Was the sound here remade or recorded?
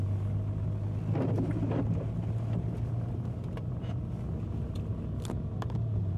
recorded